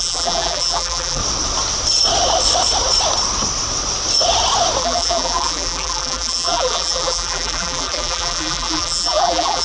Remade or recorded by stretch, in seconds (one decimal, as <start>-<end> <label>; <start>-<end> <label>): 0.0-1.2 remade; 1.2-4.8 recorded; 4.8-9.6 remade